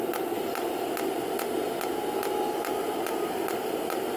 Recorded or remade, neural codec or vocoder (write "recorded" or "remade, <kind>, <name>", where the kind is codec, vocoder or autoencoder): recorded